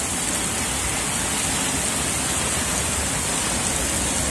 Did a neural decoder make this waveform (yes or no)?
no